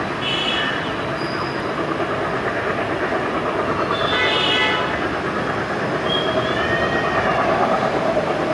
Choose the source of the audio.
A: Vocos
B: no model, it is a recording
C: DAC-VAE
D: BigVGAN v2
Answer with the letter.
B